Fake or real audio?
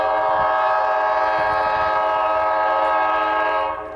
real